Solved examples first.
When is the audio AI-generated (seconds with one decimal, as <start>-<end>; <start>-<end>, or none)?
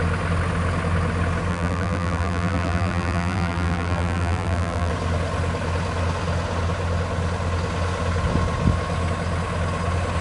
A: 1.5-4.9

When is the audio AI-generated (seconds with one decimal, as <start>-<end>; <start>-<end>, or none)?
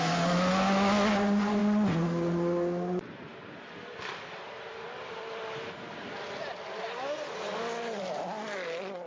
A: none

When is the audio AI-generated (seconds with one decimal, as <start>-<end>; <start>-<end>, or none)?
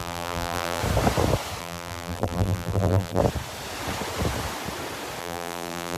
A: 0.0-0.8; 1.6-3.2; 5.2-6.0